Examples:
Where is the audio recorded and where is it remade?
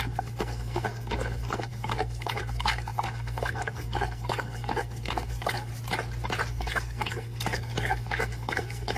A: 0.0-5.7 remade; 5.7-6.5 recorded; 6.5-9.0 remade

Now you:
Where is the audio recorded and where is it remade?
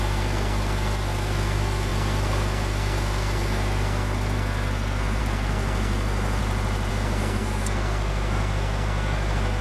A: 0.0-6.4 remade; 6.4-6.9 recorded; 6.9-9.6 remade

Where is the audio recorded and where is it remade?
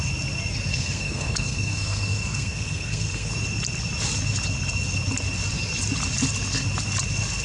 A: 0.0-0.7 recorded; 0.7-3.3 remade; 3.3-7.4 recorded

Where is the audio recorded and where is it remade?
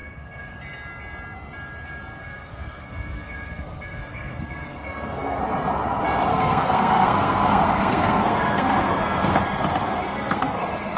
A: 0.0-0.6 remade; 0.6-2.2 recorded; 2.2-5.4 remade; 5.4-6.3 recorded; 6.3-9.4 remade; 9.4-10.0 recorded; 10.0-10.6 remade; 10.6-11.0 recorded